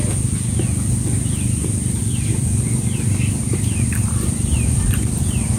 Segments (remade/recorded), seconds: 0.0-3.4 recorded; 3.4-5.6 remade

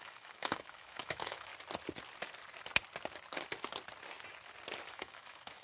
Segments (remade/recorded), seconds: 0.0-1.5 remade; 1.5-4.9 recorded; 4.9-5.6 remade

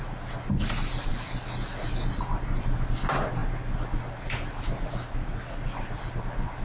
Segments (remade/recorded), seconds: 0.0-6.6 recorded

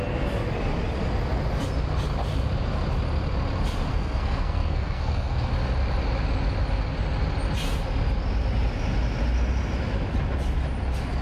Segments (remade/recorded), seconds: 0.0-3.9 recorded; 3.9-5.5 remade; 5.5-11.2 recorded

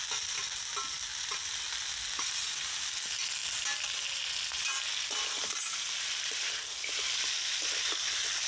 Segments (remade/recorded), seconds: 0.0-8.5 recorded